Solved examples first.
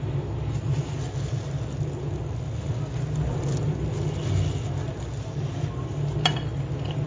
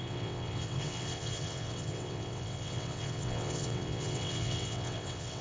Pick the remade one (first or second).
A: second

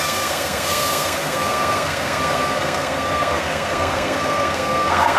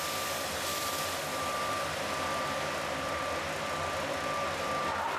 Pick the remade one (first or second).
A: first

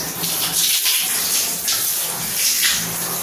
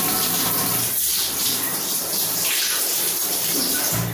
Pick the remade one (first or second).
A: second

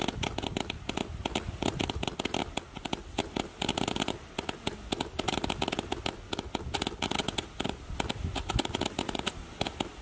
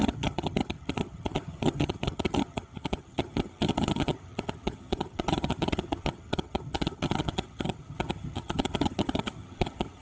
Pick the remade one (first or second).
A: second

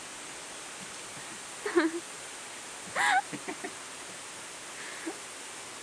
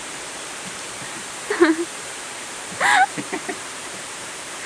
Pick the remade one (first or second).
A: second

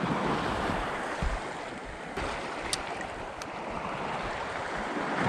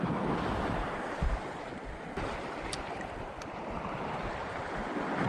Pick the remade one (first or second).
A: second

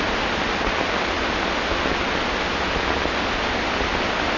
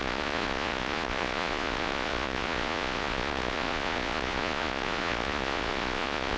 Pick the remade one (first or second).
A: second